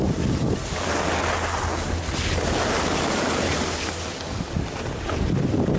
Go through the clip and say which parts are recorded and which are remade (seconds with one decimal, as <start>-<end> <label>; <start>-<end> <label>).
0.0-5.8 recorded